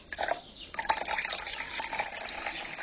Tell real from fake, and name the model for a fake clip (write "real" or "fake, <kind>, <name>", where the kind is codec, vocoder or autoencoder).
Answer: real